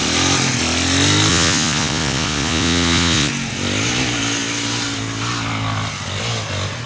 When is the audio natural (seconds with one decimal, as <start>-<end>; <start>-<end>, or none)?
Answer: 0.0-1.3; 3.3-6.9